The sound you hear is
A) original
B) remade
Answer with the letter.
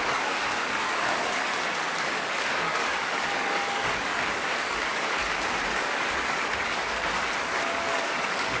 B